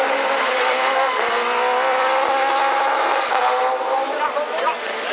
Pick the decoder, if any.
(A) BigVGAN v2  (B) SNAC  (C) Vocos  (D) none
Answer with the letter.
D